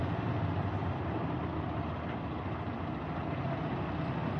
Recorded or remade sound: recorded